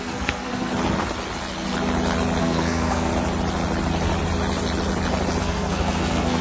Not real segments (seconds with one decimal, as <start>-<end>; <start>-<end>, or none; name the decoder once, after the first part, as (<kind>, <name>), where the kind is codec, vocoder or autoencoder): 0.0-0.7 (codec, SNAC); 2.4-3.1; 5.4-6.4